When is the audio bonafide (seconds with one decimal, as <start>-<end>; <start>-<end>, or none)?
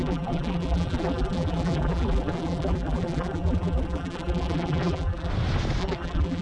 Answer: 5.3-5.8